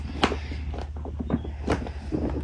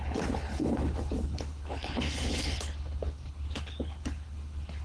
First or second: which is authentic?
first